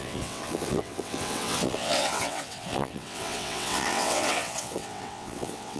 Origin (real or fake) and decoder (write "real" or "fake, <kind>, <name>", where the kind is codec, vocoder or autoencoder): fake, vocoder, WaveNeXt